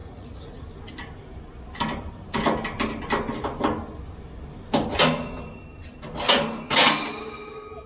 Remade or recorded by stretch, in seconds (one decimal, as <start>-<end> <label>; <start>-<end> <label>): 0.0-0.6 remade; 0.6-7.9 recorded